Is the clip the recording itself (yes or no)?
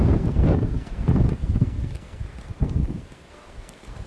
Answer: no